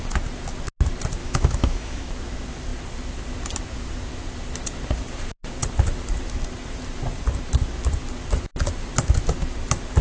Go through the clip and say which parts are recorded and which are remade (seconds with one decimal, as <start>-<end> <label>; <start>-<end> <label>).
0.0-1.2 recorded; 1.2-2.1 remade; 2.1-10.0 recorded